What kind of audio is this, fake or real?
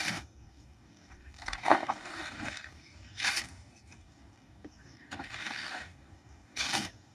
fake